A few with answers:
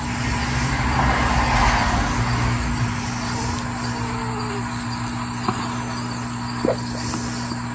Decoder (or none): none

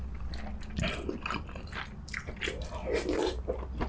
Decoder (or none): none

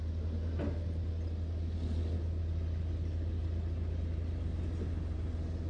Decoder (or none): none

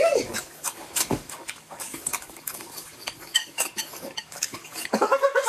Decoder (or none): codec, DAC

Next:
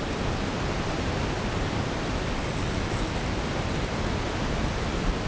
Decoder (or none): none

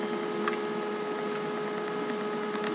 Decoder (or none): none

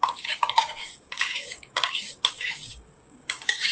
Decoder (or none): codec, DAC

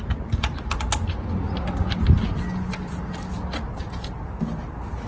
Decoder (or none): none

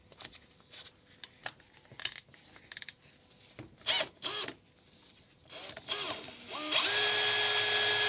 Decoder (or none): none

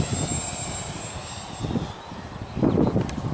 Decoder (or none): none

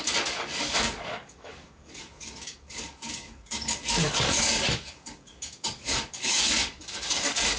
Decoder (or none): codec, DAC